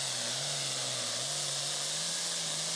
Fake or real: real